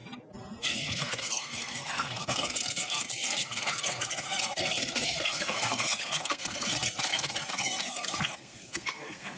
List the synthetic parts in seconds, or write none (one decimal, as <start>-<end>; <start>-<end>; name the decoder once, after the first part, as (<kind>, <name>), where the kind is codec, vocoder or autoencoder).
0.6-9.4 (codec, SNAC)